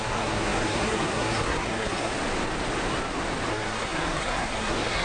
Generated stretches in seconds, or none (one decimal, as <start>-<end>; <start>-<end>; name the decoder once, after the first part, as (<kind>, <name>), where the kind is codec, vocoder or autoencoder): 0.0-2.1 (codec, SNAC); 3.5-5.0